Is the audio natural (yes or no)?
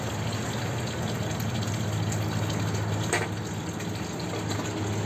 yes